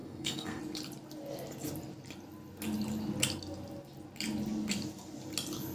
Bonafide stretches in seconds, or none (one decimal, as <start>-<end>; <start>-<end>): 0.6-5.7